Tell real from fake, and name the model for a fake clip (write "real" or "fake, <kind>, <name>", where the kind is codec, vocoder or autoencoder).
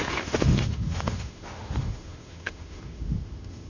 fake, autoencoder, DAC-VAE